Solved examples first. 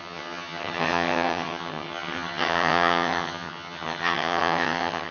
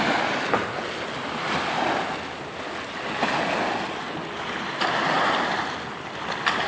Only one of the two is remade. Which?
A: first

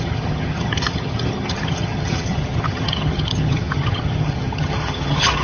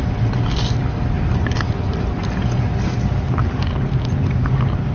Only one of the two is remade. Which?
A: first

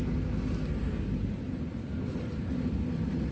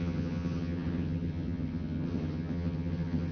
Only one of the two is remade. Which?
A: second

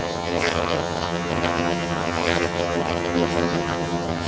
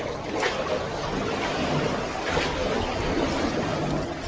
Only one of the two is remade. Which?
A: first